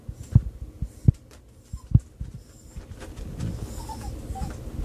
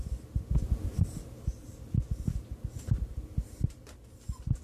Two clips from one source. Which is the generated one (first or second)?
second